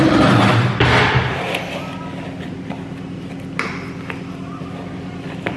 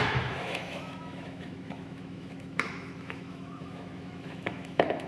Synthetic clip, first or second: second